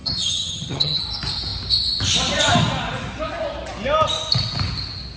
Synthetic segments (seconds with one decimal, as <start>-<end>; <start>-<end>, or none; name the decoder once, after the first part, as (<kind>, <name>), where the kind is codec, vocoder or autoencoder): 0.0-1.0 (vocoder, HiFi-GAN)